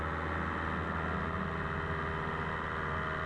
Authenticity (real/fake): real